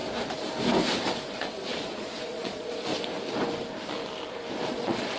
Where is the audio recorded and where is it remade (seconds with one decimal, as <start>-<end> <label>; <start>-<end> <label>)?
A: 0.0-1.3 recorded; 1.3-2.9 remade; 2.9-4.7 recorded; 4.7-5.2 remade